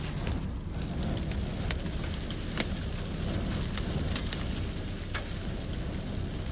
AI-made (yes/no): no